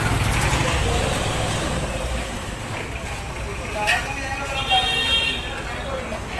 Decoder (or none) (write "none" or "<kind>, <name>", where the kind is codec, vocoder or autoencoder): none